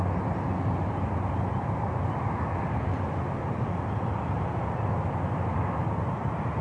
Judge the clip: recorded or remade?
recorded